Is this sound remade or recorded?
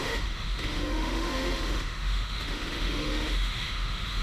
remade